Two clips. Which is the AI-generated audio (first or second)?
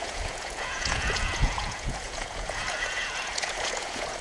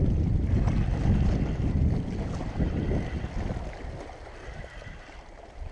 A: first